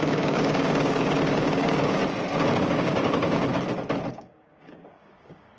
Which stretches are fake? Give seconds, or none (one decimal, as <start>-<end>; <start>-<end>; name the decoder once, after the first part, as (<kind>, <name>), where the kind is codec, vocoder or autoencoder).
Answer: 0.0-2.0 (codec, DAC); 2.6-3.5; 4.1-5.6